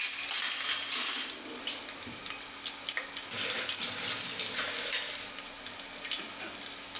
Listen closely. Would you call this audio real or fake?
real